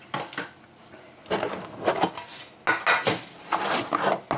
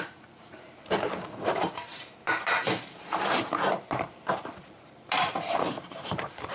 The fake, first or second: second